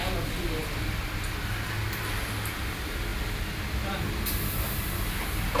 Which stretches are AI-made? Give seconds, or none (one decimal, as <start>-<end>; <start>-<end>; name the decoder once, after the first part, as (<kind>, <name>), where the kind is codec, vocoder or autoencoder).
none